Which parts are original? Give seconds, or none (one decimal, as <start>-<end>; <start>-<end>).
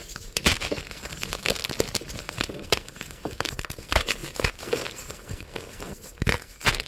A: 1.6-2.2